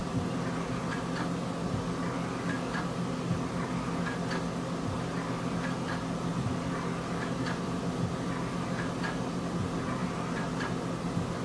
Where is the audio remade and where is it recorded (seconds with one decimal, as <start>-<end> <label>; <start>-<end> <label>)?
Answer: 0.0-11.4 recorded